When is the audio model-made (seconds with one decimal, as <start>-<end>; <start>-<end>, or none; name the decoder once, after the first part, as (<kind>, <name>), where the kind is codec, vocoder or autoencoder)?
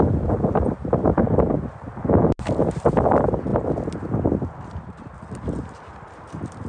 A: none